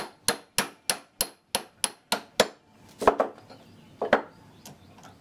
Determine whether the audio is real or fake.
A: real